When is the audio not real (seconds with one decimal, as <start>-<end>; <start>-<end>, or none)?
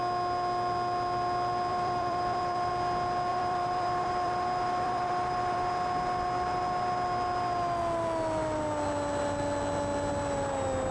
1.7-2.7; 3.3-5.7